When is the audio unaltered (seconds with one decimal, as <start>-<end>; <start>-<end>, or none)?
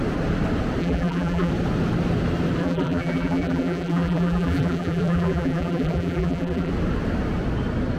0.0-0.8; 1.5-2.6; 6.7-8.0